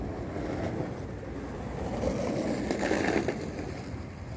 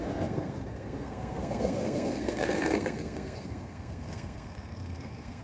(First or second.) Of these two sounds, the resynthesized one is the second